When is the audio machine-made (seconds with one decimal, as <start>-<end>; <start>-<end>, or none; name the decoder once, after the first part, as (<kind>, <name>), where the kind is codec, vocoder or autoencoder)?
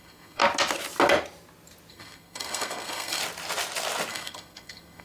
0.0-0.4 (codec, SNAC); 1.9-3.2; 4.1-5.0